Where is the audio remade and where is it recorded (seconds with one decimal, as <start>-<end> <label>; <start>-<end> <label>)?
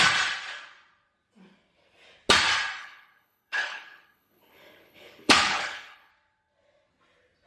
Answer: 0.0-2.8 recorded; 2.8-6.1 remade; 6.1-7.5 recorded